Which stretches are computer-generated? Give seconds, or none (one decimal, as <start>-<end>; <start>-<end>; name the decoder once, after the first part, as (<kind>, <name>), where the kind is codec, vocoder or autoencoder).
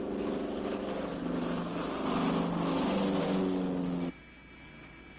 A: none